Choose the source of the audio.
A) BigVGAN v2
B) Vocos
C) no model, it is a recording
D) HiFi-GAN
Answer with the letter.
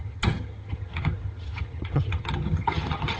D